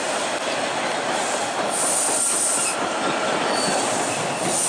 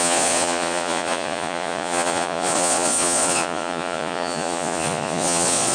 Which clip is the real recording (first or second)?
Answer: first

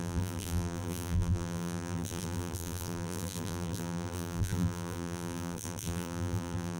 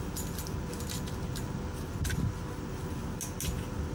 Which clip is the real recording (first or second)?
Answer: second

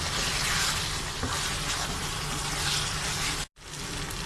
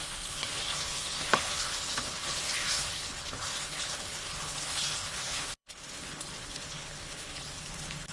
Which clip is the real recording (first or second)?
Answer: first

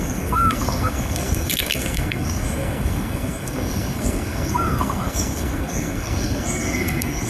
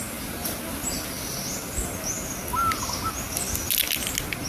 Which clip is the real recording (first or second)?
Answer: second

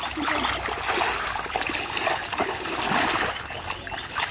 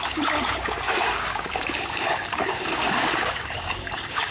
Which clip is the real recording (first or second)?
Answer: first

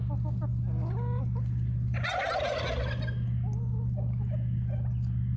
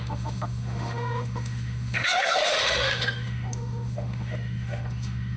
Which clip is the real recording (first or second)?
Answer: first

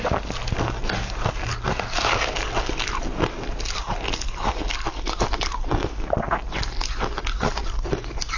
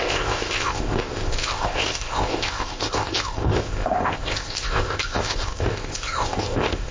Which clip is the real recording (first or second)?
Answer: first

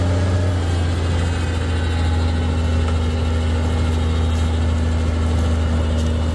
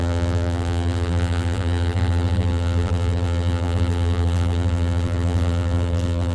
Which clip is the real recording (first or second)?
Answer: first